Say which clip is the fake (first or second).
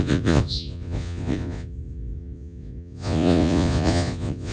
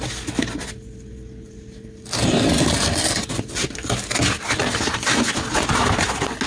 first